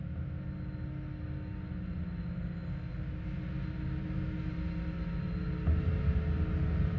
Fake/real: real